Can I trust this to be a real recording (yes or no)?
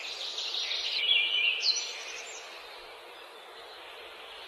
yes